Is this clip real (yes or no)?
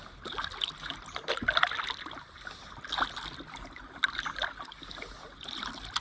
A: yes